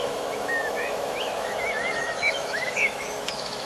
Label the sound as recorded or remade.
remade